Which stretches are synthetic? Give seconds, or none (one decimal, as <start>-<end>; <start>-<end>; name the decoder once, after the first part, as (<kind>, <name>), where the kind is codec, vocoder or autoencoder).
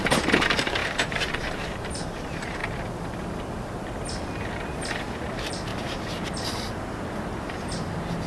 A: 0.0-2.6 (vocoder, BigVGAN v2); 4.9-5.7